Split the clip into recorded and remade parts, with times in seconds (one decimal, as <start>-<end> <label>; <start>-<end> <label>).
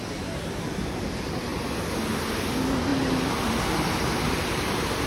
0.0-5.1 recorded